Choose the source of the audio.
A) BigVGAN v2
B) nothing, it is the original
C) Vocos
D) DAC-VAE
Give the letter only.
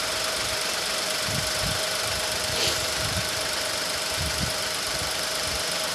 A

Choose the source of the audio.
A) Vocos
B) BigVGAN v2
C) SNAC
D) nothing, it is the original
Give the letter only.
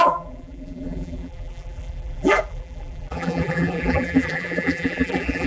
B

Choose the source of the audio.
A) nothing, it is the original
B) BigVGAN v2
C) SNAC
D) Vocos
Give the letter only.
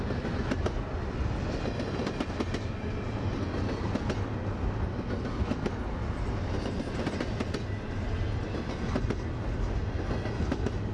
A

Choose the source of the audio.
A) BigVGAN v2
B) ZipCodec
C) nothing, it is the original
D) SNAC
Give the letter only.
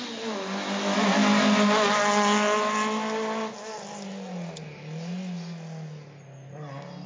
C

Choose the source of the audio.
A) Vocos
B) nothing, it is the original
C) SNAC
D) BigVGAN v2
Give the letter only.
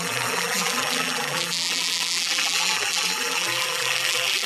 D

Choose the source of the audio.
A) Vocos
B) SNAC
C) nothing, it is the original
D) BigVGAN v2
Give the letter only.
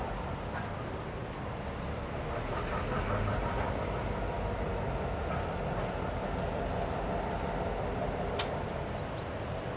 C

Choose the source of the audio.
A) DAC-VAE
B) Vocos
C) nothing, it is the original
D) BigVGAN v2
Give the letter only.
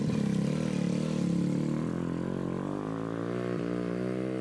C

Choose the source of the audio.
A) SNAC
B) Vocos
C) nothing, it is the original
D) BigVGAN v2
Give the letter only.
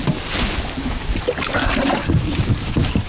C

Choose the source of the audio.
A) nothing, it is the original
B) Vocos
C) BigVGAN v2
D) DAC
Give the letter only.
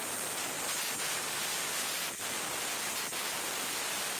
A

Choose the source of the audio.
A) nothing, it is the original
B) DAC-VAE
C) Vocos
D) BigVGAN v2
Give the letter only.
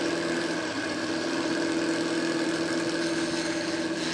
A